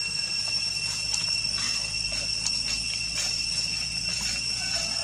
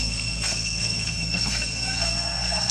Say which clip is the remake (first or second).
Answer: second